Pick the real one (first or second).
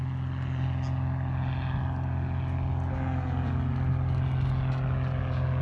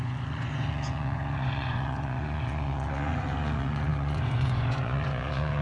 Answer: first